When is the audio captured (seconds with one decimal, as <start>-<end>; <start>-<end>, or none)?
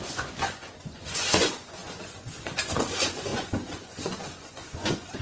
none